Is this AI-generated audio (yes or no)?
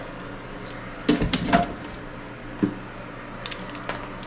no